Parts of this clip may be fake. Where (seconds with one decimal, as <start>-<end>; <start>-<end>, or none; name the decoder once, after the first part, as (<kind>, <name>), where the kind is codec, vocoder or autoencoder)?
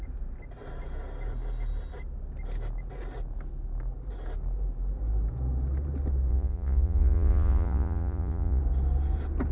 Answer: 6.3-8.6 (vocoder, Vocos)